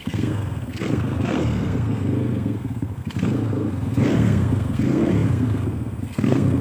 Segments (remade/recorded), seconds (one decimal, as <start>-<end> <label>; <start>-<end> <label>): 0.0-6.6 remade

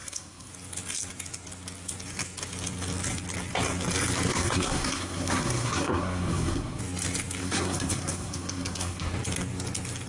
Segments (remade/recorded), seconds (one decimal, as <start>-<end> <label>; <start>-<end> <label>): 0.0-0.5 remade; 0.5-4.3 recorded; 4.3-6.8 remade; 6.8-7.4 recorded; 7.4-9.1 remade; 9.1-10.1 recorded